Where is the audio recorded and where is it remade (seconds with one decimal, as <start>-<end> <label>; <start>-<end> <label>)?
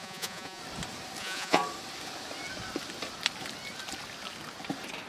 0.0-0.6 remade; 0.6-1.2 recorded; 1.2-1.6 remade; 1.6-5.1 recorded